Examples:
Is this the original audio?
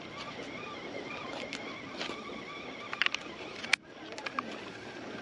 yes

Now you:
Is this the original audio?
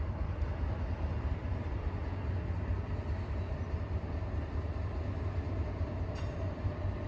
yes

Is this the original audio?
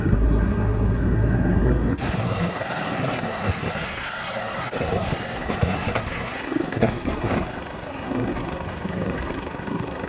no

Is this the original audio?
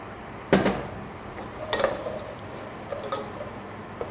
yes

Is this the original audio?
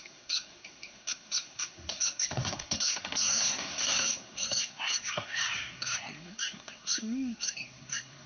no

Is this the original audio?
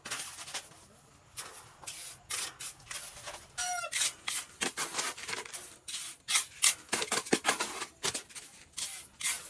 yes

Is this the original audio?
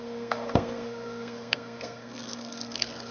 no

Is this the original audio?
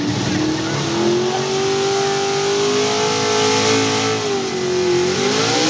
yes